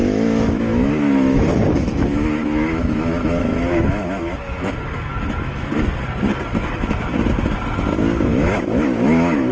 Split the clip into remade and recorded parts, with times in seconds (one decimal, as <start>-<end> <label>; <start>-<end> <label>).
0.0-4.6 remade; 4.6-5.1 recorded; 5.1-5.7 remade; 5.7-8.3 recorded; 8.3-9.5 remade